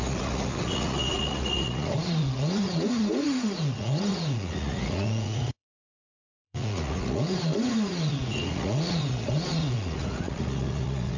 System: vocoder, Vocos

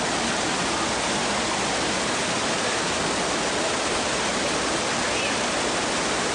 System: none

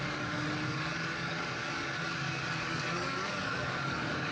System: codec, DAC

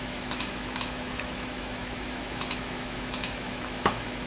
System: autoencoder, DAC-VAE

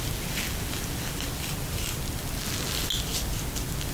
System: none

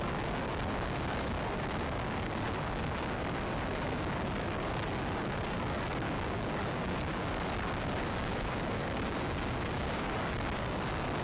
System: codec, DAC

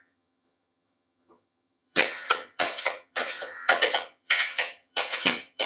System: vocoder, HiFi-GAN